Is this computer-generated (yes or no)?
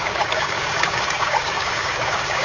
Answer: yes